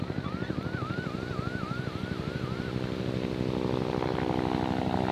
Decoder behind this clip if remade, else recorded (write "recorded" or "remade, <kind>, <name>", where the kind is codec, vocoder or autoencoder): recorded